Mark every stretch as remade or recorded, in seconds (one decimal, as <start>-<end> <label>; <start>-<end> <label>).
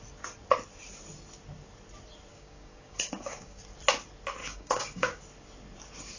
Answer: 0.0-2.3 recorded; 2.3-3.6 remade; 3.6-4.4 recorded; 4.4-5.2 remade; 5.2-6.2 recorded